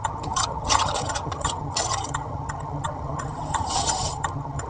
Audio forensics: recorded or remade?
remade